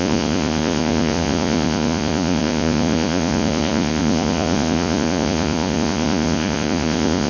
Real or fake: fake